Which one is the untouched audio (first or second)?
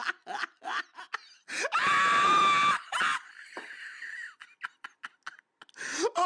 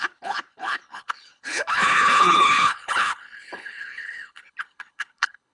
first